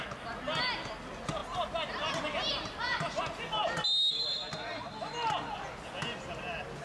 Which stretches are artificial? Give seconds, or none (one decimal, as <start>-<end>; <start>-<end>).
none